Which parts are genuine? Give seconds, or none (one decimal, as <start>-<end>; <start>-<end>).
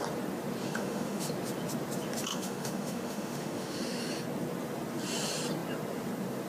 0.0-0.6; 1.3-2.3; 4.0-6.5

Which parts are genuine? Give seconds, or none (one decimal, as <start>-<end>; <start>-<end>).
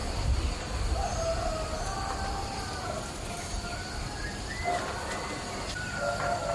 0.0-6.5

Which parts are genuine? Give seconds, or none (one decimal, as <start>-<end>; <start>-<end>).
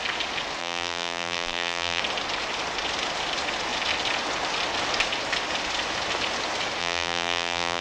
0.0-0.6; 2.0-6.8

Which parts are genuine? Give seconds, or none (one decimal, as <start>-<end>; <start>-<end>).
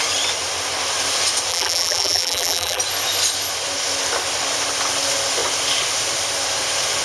0.0-1.5; 2.8-7.0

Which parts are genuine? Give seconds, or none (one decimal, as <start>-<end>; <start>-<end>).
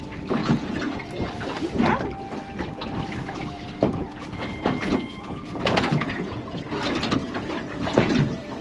0.0-0.4; 1.0-4.0; 6.6-7.2; 8.1-8.6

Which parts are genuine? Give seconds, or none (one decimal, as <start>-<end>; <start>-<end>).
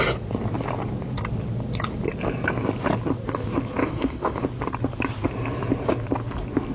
0.0-3.8; 4.4-6.7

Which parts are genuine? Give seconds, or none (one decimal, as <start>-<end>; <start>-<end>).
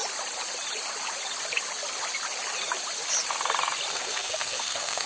0.0-3.9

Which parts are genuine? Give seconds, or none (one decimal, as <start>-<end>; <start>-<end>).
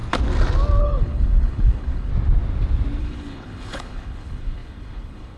0.0-0.8; 2.1-3.0